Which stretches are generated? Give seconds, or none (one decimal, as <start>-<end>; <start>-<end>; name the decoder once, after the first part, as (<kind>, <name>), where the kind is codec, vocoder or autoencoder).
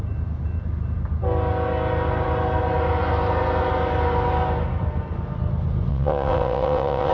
5.9-7.1 (vocoder, WaveNeXt)